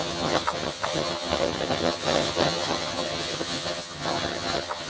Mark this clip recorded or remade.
remade